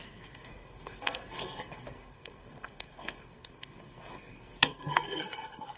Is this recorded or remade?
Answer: remade